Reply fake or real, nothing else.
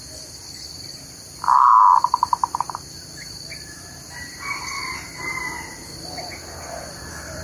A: real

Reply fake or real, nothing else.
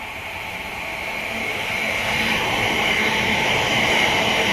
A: fake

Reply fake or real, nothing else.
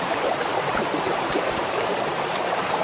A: fake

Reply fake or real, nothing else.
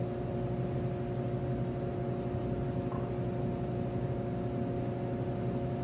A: real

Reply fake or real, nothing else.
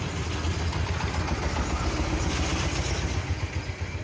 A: real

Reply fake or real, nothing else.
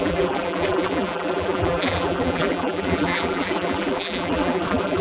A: fake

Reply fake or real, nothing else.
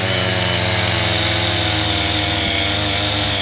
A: real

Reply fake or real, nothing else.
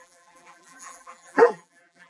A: fake